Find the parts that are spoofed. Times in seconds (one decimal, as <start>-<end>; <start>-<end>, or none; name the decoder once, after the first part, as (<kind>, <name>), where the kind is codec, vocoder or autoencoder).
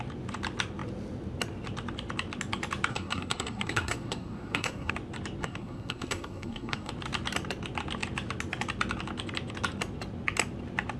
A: 2.9-4.9 (codec, SNAC); 5.4-6.9